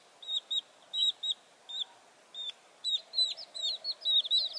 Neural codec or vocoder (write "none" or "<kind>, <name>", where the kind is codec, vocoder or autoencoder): none